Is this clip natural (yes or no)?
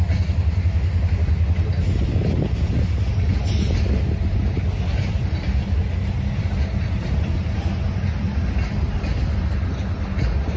yes